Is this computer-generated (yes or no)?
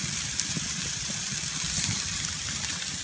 yes